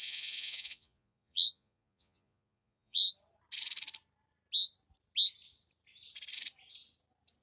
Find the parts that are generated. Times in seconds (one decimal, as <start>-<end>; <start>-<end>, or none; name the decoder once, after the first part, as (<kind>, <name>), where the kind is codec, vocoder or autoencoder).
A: 0.0-3.0 (vocoder, Vocos)